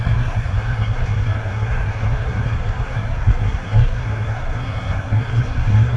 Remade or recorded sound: remade